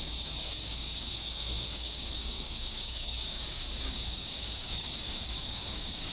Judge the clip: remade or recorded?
remade